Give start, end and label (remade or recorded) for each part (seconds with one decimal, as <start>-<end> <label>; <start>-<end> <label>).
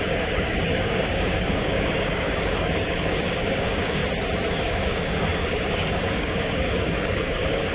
0.0-4.0 remade; 4.0-4.5 recorded; 4.5-7.7 remade